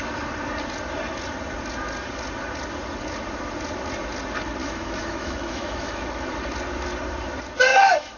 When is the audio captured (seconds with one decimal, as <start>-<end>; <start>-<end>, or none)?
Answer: 0.0-4.6; 6.0-7.7